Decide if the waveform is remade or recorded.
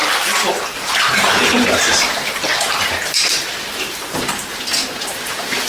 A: remade